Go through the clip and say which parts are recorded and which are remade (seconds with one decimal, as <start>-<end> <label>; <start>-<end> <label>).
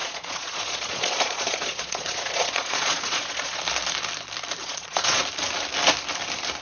0.0-3.6 remade; 3.6-4.6 recorded; 4.6-5.2 remade; 5.2-6.6 recorded